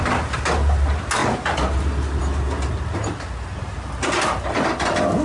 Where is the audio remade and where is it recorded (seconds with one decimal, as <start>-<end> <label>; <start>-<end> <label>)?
0.0-5.2 recorded